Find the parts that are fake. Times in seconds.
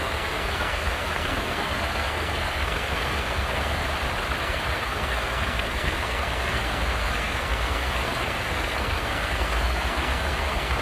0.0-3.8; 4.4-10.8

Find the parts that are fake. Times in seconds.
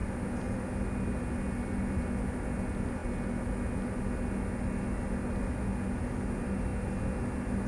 none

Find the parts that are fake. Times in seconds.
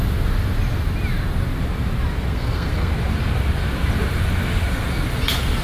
2.3-2.9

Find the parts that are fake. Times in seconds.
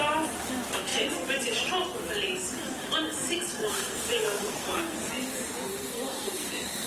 3.6-5.1; 5.7-6.9